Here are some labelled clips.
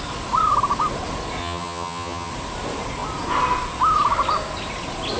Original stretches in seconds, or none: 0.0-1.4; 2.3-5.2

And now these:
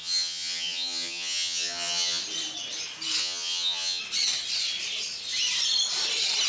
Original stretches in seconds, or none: 2.2-3.2; 4.0-6.5

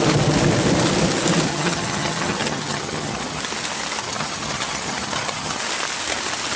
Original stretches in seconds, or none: 0.0-1.5; 3.4-4.0; 5.6-6.6

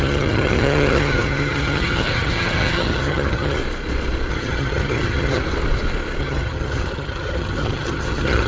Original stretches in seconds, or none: 3.6-4.3; 5.4-6.2